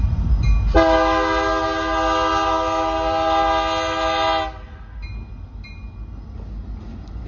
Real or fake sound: real